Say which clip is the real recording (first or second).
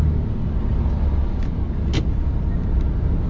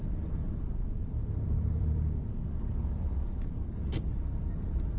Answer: first